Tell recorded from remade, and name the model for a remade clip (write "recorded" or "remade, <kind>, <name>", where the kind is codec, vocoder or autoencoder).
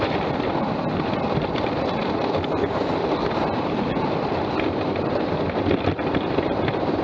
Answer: recorded